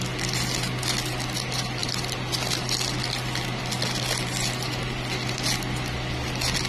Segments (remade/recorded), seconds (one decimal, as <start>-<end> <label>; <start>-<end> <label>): 0.0-6.7 recorded